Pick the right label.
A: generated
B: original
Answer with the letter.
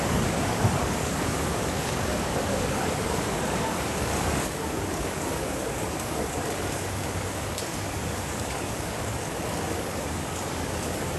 A